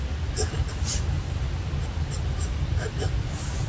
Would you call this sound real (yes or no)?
yes